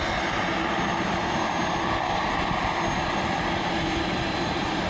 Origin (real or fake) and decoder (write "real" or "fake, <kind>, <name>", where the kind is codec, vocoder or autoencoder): real